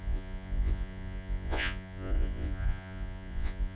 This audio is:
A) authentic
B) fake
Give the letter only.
B